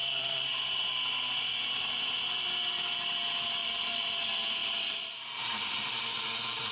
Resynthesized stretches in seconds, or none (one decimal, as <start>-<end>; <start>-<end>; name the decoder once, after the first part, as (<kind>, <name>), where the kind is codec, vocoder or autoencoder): 0.0-0.8 (vocoder, BigVGAN v2); 3.6-4.1; 4.6-6.0

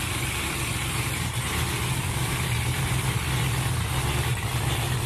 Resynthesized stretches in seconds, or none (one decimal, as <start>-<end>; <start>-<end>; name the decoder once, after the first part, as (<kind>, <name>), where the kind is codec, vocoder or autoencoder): 0.7-3.2 (vocoder, BigVGAN v2)